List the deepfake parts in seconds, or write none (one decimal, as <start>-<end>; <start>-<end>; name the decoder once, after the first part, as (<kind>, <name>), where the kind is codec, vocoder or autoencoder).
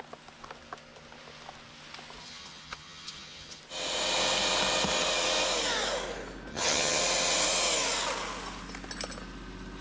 2.2-3.6 (vocoder, HiFi-GAN); 6.5-7.0